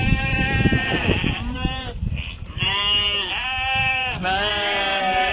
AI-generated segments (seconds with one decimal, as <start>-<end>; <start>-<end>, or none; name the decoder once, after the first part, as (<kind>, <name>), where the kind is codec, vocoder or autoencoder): 0.0-2.8 (vocoder, BigVGAN v2); 3.4-4.0; 4.5-5.3

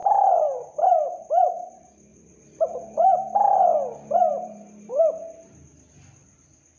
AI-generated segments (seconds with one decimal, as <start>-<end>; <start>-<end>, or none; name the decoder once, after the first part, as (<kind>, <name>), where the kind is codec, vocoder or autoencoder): 0.0-1.3 (vocoder, BigVGAN v2); 2.1-3.1; 4.3-5.0

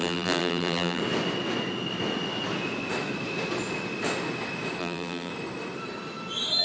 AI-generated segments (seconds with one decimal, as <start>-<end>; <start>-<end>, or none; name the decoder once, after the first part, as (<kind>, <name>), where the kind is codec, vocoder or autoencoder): 0.0-1.0 (vocoder, BigVGAN v2); 4.8-5.3